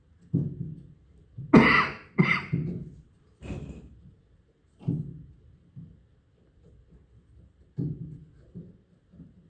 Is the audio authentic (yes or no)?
yes